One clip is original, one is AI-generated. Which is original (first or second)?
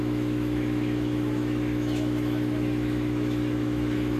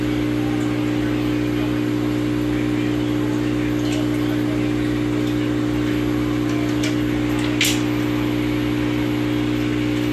second